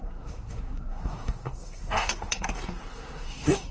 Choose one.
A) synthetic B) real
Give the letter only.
A